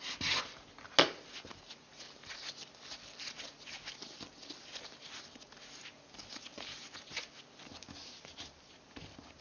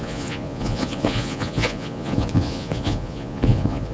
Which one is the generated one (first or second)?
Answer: second